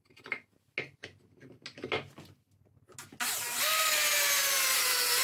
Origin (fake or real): real